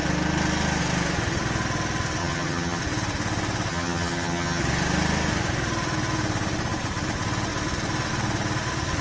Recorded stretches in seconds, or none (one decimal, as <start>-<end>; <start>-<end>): 0.0-2.2; 2.8-3.7; 4.6-9.0